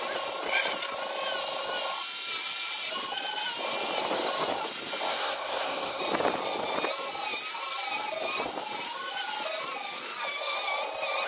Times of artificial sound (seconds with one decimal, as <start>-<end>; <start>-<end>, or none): 5.1-6.0